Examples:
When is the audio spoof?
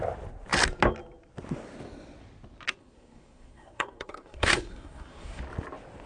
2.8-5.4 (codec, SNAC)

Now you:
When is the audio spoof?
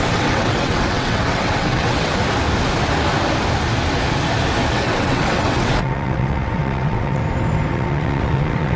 0.0-2.2 (vocoder, WaveNeXt); 4.7-7.2; 7.7-8.8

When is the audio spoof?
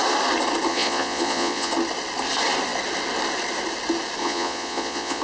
0.7-1.7 (vocoder, Vocos); 4.2-5.2